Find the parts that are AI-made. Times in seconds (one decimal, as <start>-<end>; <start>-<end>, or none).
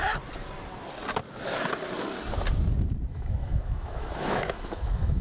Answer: 3.1-5.2